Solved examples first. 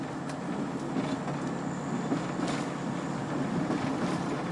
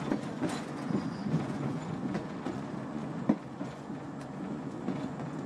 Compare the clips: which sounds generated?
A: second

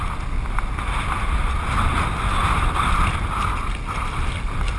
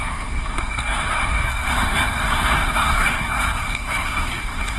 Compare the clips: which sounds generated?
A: second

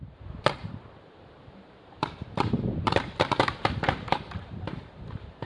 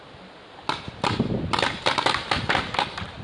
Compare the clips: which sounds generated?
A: first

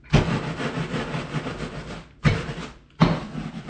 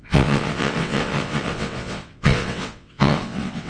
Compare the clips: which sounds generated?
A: second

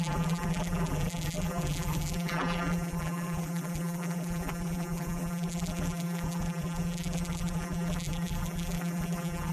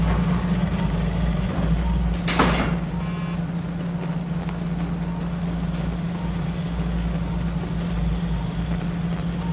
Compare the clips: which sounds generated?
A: first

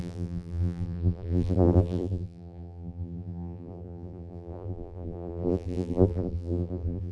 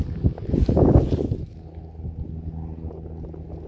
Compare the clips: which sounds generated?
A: first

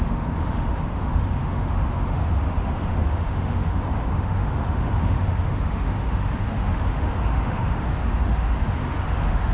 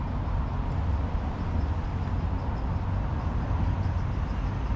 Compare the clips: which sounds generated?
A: first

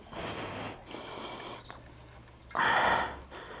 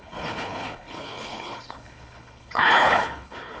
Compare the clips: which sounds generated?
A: second